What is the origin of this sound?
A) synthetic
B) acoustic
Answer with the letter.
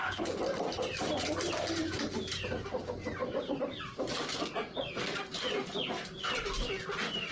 B